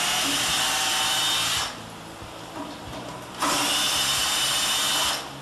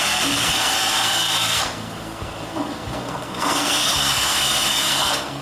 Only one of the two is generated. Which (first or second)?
second